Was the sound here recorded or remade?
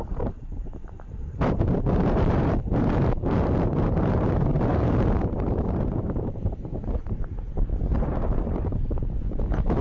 remade